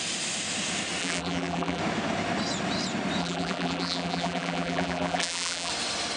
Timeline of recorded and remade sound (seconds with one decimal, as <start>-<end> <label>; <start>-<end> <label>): 0.0-1.0 recorded; 1.0-1.8 remade; 1.8-3.2 recorded; 3.2-5.7 remade; 5.7-6.2 recorded